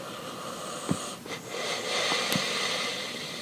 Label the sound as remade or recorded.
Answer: recorded